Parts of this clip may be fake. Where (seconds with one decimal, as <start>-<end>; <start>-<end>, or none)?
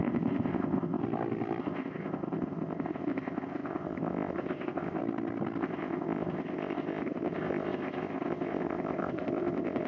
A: 0.0-1.0; 1.6-5.0; 5.6-9.9